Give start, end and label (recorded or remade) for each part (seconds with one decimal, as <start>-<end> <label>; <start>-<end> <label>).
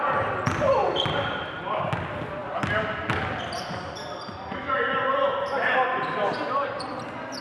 0.0-7.4 recorded